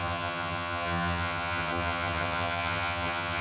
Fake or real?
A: fake